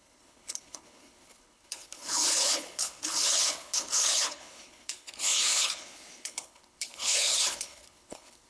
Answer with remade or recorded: remade